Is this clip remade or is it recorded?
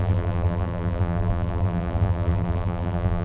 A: remade